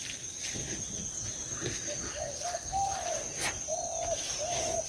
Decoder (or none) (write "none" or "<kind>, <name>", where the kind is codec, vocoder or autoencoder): none